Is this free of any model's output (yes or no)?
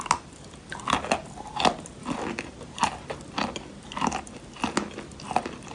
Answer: yes